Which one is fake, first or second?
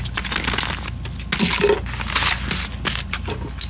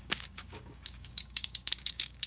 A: second